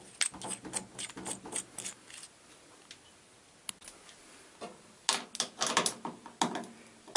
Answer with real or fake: real